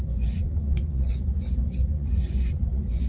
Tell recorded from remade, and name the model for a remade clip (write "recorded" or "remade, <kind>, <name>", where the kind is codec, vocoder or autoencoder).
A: remade, vocoder, Vocos